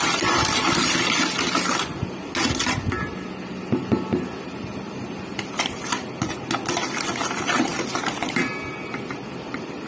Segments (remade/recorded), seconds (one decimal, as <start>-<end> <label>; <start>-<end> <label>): 0.0-9.9 recorded